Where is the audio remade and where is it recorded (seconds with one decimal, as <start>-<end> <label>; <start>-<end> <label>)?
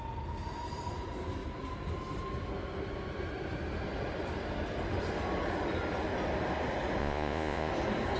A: 0.0-7.0 recorded; 7.0-7.7 remade; 7.7-8.2 recorded